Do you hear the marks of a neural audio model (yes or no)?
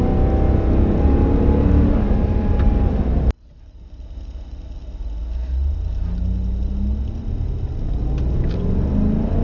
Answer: no